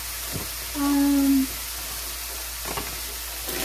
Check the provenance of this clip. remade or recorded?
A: recorded